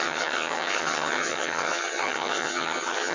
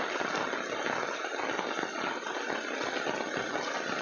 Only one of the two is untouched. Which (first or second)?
second